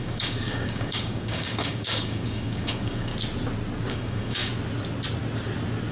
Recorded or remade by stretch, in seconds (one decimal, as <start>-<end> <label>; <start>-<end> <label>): 0.0-3.1 remade; 3.1-3.9 recorded; 3.9-4.5 remade; 4.5-5.9 recorded